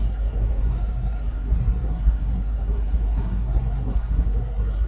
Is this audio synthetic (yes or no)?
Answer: yes